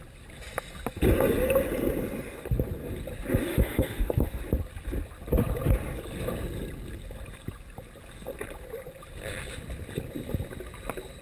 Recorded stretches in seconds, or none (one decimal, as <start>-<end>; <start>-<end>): 0.0-3.5; 4.4-11.2